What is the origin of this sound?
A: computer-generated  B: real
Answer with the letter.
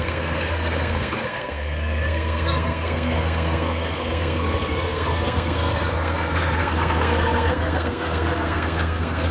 A